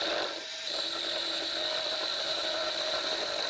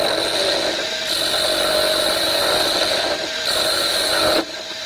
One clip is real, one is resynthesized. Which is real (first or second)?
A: second